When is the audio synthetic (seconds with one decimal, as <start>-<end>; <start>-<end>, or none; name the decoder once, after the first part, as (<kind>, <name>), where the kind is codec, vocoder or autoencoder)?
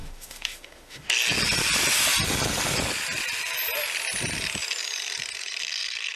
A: 0.0-1.1 (autoencoder, DAC-VAE)